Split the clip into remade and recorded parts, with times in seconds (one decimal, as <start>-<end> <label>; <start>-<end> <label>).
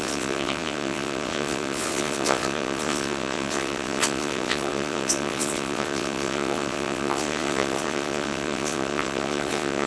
0.0-9.9 remade